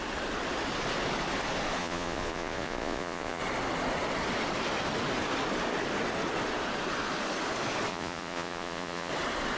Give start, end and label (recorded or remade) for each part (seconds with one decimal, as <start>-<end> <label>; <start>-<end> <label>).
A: 0.0-1.8 recorded; 1.8-3.4 remade; 3.4-7.9 recorded; 7.9-9.1 remade; 9.1-9.6 recorded